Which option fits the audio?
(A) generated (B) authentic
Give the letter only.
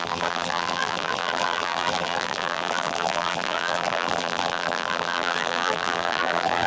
A